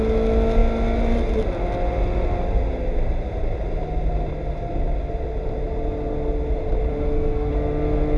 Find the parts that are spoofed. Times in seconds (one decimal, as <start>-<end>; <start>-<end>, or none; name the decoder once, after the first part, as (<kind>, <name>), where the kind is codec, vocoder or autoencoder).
6.9-7.5 (autoencoder, DAC-VAE)

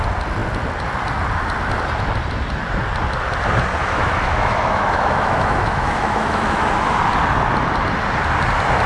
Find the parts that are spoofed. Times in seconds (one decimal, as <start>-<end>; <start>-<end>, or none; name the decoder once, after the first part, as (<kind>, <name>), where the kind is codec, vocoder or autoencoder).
3.8-6.7 (autoencoder, DAC-VAE)